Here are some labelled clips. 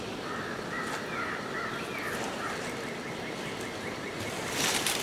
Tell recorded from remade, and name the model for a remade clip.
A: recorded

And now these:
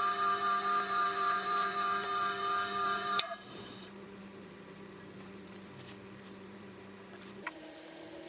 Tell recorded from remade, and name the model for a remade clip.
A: remade, vocoder, BigVGAN v2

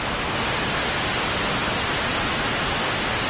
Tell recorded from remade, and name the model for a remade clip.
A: recorded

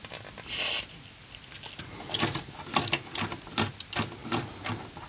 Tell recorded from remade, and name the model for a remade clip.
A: recorded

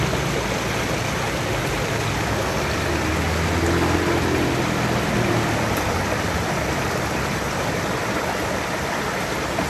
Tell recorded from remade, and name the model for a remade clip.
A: recorded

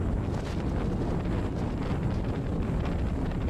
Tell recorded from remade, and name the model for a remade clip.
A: recorded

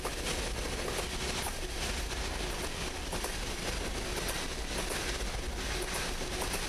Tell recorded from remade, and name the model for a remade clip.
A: recorded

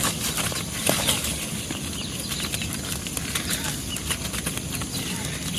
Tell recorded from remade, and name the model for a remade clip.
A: recorded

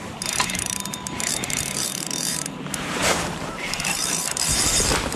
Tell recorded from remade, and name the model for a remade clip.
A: remade, vocoder, BigVGAN v2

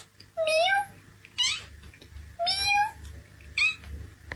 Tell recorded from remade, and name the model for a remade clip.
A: remade, vocoder, BigVGAN v2